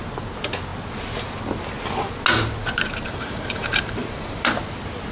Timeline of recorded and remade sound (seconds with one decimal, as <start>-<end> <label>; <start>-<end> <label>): 0.0-2.6 recorded; 2.6-4.5 remade; 4.5-5.1 recorded